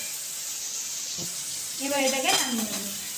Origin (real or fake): fake